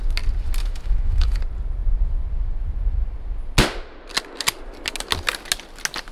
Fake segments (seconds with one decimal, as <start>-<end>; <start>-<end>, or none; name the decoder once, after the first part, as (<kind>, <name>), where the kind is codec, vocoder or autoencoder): 0.6-1.4 (autoencoder, DAC-VAE)